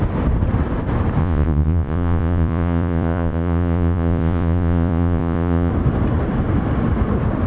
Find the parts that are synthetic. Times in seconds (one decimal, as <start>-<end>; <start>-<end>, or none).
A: 1.2-5.7